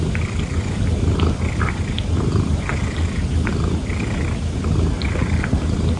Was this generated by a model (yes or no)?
no